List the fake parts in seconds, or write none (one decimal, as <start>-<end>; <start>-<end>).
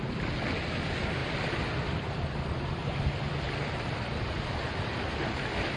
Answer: none